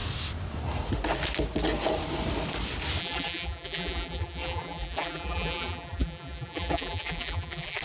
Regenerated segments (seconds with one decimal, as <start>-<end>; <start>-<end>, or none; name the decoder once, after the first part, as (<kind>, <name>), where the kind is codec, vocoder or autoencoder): 3.0-7.8 (vocoder, BigVGAN v2)